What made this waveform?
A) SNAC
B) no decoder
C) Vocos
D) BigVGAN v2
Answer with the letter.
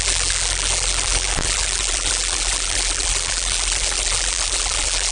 D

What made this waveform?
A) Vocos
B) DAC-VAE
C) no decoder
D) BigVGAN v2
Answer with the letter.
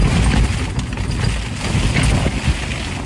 C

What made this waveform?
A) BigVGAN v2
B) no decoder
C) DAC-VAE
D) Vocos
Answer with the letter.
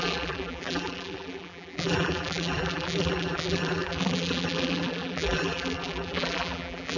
A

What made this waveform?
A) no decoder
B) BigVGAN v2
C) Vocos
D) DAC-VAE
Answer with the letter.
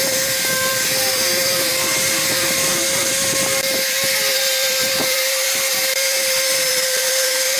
B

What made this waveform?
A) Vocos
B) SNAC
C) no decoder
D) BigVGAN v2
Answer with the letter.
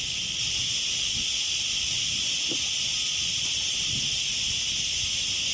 C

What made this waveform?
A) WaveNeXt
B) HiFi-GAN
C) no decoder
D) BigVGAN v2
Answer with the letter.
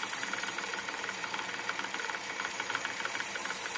D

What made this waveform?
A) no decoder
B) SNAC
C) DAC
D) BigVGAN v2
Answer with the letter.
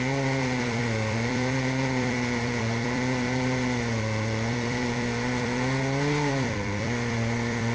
D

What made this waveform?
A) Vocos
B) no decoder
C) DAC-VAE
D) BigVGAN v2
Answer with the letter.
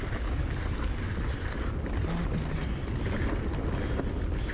B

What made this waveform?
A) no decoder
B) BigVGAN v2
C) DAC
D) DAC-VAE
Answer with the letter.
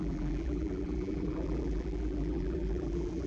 B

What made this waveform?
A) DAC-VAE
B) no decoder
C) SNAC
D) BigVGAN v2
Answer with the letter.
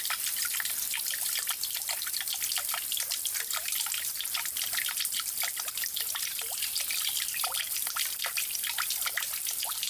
B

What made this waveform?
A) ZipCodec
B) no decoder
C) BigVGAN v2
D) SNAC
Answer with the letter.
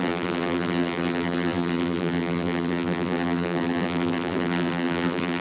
C